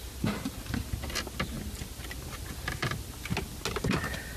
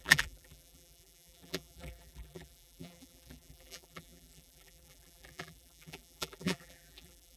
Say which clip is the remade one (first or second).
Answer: second